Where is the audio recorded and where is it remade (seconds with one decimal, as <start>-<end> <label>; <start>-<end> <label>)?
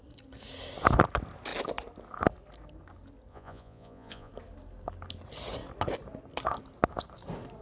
0.0-3.3 recorded; 3.3-4.3 remade; 4.3-7.6 recorded